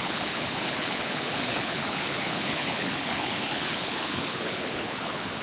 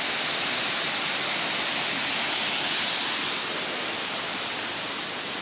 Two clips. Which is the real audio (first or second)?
second